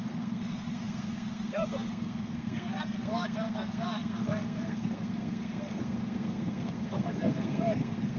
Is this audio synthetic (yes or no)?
yes